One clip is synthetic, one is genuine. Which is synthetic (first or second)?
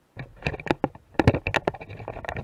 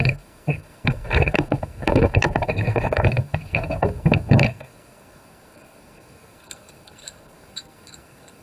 second